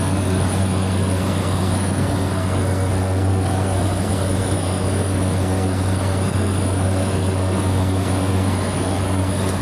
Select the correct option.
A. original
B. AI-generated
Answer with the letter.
B